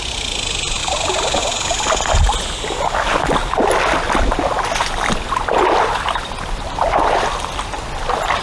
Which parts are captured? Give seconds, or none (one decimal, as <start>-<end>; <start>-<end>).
0.0-8.4